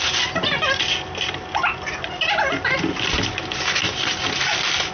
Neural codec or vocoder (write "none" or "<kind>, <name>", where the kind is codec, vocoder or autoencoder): none